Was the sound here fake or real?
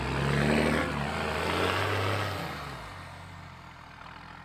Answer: real